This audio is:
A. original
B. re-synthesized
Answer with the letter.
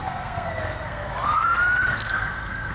B